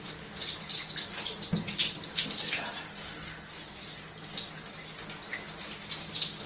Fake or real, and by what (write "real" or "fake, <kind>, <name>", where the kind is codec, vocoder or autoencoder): real